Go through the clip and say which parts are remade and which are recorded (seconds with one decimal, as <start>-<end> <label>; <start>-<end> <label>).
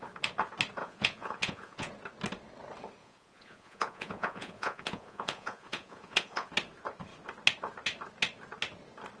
0.0-0.8 recorded; 0.8-1.9 remade; 1.9-3.0 recorded; 3.0-6.5 remade; 6.5-9.2 recorded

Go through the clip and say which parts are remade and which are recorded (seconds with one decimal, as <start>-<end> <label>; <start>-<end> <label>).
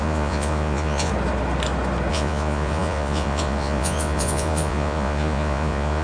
0.0-1.1 remade; 1.1-2.1 recorded; 2.1-6.0 remade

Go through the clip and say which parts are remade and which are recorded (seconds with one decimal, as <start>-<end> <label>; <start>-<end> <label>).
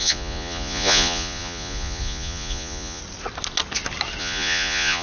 0.0-3.0 remade; 3.0-4.2 recorded; 4.2-5.0 remade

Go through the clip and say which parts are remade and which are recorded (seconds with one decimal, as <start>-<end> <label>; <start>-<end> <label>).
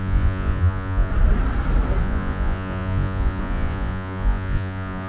0.0-1.1 remade; 1.1-2.0 recorded; 2.0-5.1 remade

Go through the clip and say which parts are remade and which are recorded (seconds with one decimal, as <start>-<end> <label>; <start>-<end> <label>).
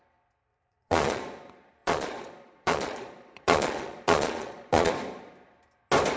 0.0-0.5 recorded; 0.5-1.2 remade; 1.2-1.8 recorded; 1.8-4.9 remade; 4.9-6.2 recorded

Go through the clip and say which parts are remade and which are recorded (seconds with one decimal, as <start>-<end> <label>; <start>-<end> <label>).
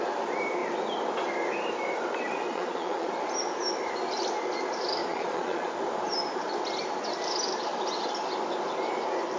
0.0-2.5 recorded; 2.5-3.1 remade; 3.1-5.0 recorded; 5.0-5.7 remade; 5.7-9.4 recorded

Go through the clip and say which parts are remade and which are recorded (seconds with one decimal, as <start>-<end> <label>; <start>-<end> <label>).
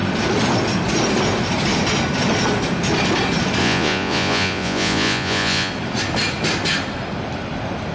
0.0-3.6 recorded; 3.6-5.7 remade; 5.7-7.9 recorded